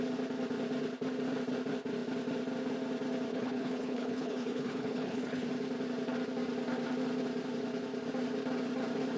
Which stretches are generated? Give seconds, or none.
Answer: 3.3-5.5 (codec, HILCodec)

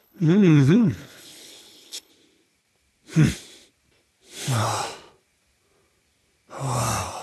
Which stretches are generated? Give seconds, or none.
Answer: 0.0-2.1 (codec, HILCodec)

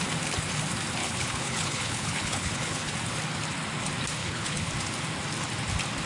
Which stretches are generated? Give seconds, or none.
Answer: 1.0-2.9 (codec, HILCodec); 4.2-4.7

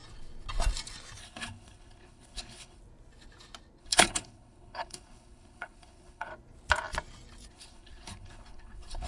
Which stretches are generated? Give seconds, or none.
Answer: 1.2-2.8 (codec, HILCodec); 3.8-6.3; 7.5-9.1